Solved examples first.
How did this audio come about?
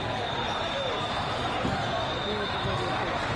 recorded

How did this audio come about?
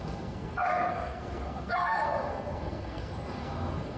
remade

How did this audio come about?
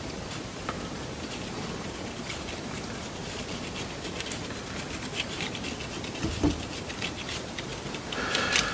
recorded